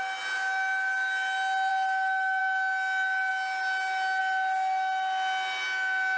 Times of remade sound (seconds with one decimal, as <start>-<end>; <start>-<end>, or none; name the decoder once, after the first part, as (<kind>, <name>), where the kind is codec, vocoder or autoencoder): none